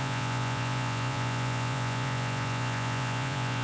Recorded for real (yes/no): no